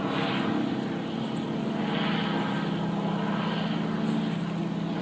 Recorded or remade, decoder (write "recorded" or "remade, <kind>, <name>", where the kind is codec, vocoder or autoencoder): recorded